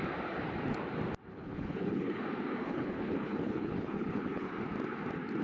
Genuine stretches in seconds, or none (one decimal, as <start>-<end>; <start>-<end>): 0.0-1.3; 2.2-2.6; 4.5-5.4